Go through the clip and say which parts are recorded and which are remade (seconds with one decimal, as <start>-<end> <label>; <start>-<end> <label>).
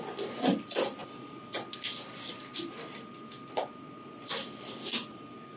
0.0-5.6 recorded